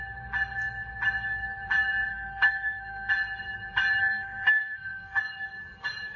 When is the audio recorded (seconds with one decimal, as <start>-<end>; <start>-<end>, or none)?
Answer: 0.0-2.1; 3.1-4.0; 5.2-6.2